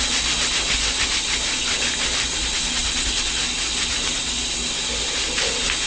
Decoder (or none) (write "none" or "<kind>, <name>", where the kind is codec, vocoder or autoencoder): none